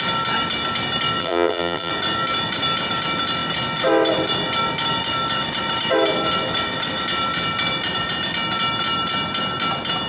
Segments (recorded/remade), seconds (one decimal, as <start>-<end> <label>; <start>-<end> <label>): 0.0-1.2 recorded; 1.2-1.9 remade; 1.9-10.1 recorded